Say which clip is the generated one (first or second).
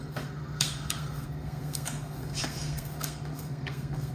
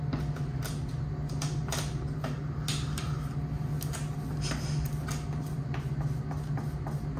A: first